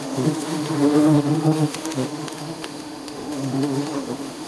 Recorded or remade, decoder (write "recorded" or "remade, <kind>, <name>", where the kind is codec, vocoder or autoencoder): remade, autoencoder, DAC-VAE